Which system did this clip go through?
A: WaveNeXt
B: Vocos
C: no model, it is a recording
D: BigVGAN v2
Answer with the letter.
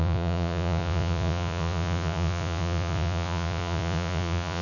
B